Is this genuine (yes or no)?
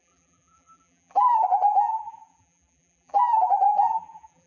no